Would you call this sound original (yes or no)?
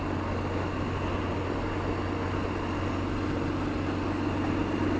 yes